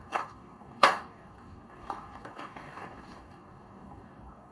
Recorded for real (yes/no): no